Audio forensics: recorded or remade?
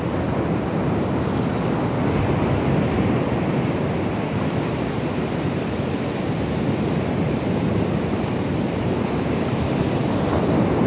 remade